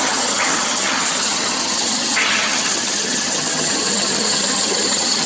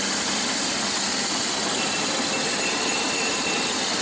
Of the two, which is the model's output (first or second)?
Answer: first